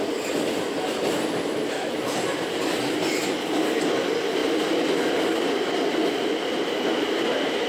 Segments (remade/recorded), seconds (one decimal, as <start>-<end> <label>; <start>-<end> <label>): 0.0-7.7 recorded